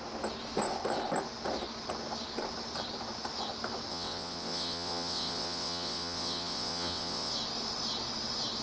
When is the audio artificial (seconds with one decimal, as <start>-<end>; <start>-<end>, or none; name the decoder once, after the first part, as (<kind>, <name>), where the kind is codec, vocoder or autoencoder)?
3.9-7.3 (vocoder, WaveNeXt)